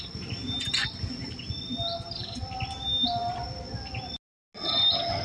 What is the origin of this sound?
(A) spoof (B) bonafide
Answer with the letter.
B